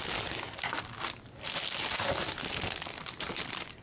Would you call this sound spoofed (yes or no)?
no